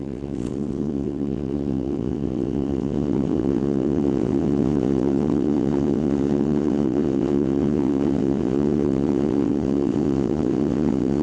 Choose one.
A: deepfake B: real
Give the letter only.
A